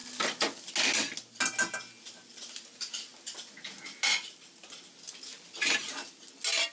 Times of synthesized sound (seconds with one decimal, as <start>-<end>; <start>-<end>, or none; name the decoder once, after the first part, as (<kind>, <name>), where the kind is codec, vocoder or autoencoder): none